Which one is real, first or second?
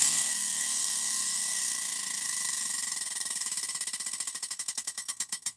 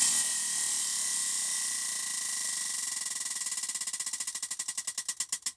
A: second